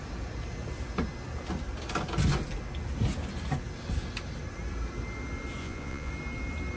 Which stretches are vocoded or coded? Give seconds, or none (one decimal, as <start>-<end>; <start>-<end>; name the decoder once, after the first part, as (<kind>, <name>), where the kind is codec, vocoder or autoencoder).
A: 5.6-6.1 (vocoder, Vocos)